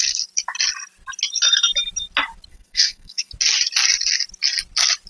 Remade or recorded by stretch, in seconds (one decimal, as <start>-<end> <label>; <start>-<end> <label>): 0.0-2.5 recorded; 2.5-3.3 remade; 3.3-5.1 recorded